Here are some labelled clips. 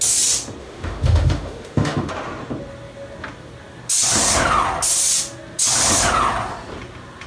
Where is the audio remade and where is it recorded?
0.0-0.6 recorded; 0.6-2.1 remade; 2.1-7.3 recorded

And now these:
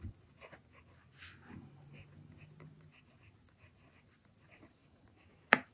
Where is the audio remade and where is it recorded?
0.0-4.8 recorded; 4.8-5.7 remade

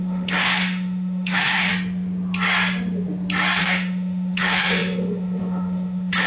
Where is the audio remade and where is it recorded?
0.0-1.7 remade; 1.7-3.6 recorded; 3.6-6.3 remade

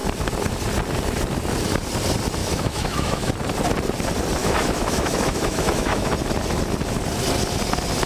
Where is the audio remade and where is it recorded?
0.0-2.4 recorded; 2.4-3.3 remade; 3.3-4.4 recorded; 4.4-6.1 remade; 6.1-8.1 recorded

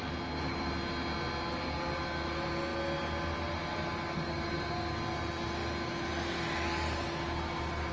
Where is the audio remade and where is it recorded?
0.0-7.9 recorded

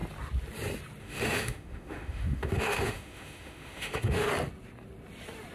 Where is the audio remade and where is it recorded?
0.0-1.0 recorded; 1.0-4.3 remade; 4.3-5.5 recorded